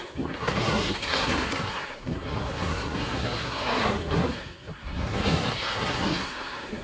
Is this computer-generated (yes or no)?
yes